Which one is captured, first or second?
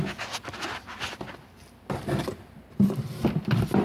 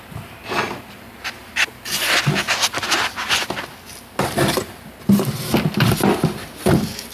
second